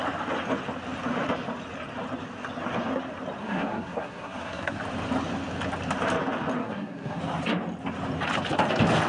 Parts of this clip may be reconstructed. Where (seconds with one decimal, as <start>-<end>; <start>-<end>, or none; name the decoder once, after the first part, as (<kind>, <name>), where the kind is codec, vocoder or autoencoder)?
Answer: 3.4-4.8 (codec, SNAC); 6.6-7.2